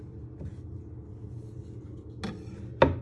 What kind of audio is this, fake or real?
real